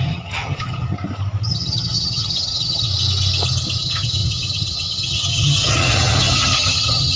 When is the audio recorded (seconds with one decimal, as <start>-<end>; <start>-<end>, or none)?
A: 0.9-1.5; 2.9-3.8